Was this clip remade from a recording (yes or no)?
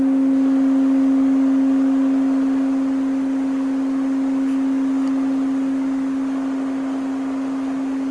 no